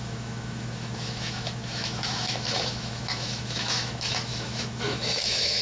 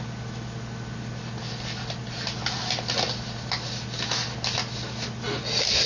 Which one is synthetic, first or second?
first